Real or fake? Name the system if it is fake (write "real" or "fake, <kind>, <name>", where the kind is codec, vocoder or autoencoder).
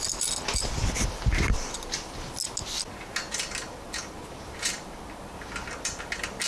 real